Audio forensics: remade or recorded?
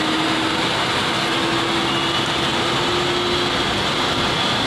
recorded